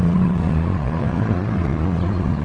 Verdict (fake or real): fake